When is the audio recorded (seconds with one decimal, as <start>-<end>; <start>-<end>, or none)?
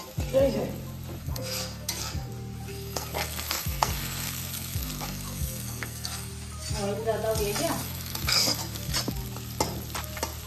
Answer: 0.0-1.2; 2.3-2.7; 6.3-7.8; 8.9-10.5